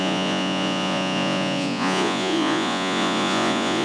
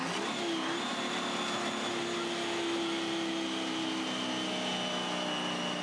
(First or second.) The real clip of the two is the second